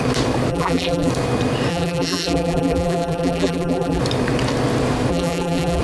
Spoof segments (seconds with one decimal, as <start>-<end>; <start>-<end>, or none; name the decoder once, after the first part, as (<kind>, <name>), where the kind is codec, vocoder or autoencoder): 0.5-1.1 (vocoder, BigVGAN v2); 1.7-4.0; 5.1-5.8